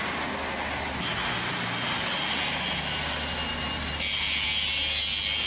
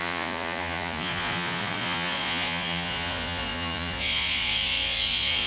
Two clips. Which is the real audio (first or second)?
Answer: first